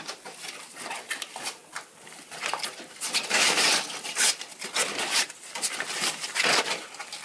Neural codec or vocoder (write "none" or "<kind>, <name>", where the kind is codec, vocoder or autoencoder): none